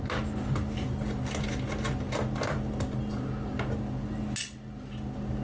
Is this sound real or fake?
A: real